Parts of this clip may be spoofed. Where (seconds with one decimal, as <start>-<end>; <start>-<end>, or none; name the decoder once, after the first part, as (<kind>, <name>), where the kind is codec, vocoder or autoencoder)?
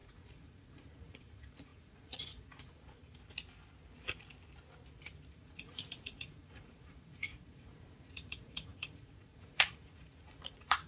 0.0-3.0 (vocoder, Vocos); 5.3-10.9